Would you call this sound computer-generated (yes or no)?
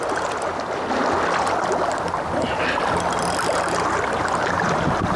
no